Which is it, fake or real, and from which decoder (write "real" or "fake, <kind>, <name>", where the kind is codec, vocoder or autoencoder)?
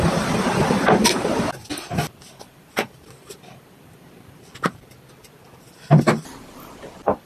fake, vocoder, BigVGAN v2